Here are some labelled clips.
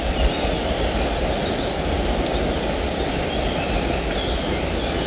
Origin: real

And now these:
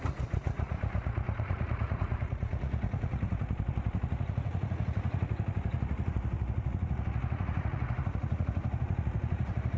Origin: fake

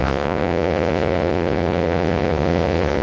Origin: fake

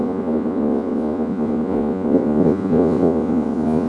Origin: fake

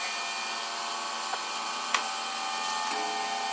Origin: real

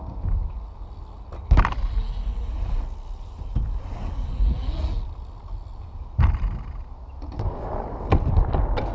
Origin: real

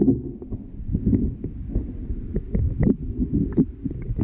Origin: real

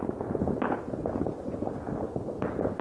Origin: real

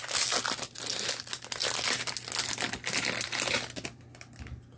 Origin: real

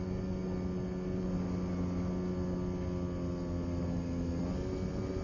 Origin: real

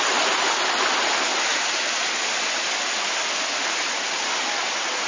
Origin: real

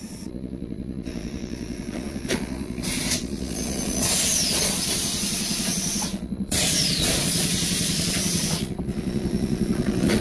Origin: fake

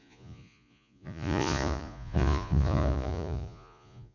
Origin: fake